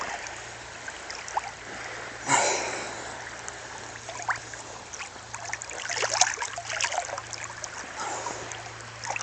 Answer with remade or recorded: recorded